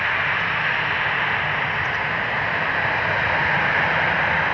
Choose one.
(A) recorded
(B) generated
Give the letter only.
A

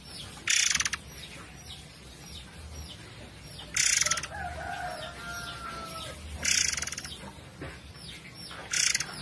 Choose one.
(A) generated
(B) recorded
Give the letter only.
B